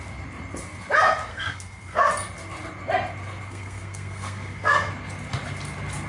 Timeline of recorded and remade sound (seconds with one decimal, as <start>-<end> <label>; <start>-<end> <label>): 0.0-1.3 recorded; 1.3-2.1 remade; 2.1-3.5 recorded; 3.5-4.9 remade; 4.9-6.1 recorded